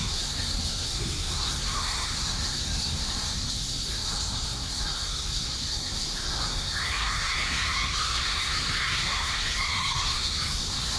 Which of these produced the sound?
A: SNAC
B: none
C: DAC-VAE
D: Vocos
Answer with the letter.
A